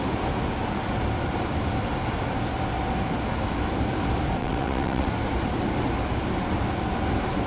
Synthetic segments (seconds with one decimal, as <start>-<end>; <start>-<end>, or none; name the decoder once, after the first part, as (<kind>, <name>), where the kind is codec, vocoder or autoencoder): 4.4-5.1 (vocoder, WaveNeXt)